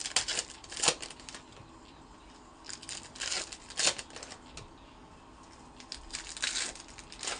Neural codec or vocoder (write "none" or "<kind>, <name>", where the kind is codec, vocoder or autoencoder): none